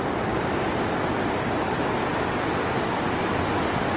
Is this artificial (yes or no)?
no